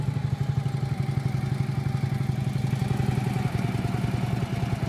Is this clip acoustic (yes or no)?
yes